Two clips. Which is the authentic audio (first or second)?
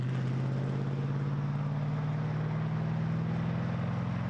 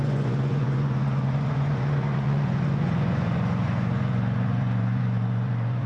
first